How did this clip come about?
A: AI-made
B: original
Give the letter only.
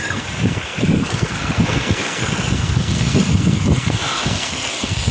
A